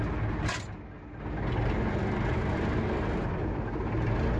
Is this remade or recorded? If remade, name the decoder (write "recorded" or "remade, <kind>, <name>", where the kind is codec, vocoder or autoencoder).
recorded